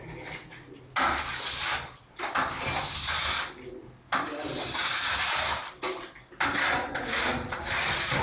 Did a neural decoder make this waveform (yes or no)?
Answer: no